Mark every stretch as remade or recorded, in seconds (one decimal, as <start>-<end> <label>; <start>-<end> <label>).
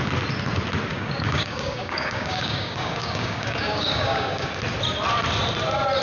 0.0-0.9 recorded; 0.9-4.5 remade; 4.5-6.0 recorded